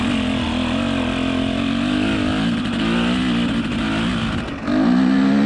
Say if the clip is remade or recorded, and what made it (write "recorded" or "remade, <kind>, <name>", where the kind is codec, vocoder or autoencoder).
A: recorded